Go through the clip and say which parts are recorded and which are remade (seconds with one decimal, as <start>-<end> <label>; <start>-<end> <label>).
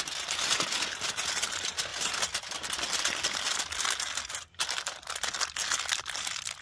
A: 0.0-6.6 recorded